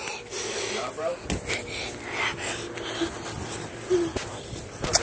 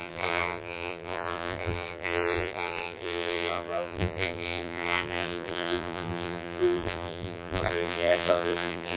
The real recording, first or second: first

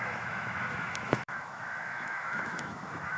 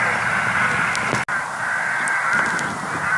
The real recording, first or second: second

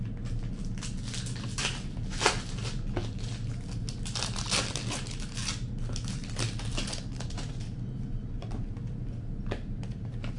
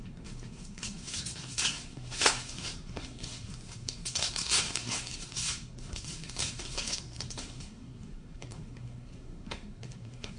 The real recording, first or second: first